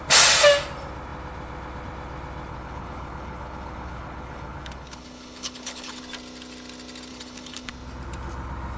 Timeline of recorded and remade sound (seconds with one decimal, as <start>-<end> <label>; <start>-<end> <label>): 0.0-2.5 recorded; 2.5-6.0 remade; 6.0-7.1 recorded; 7.1-7.7 remade; 7.7-8.8 recorded